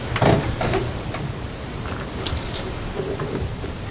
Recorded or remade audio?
remade